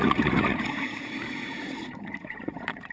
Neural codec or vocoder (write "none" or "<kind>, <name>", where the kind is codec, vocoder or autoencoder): vocoder, Vocos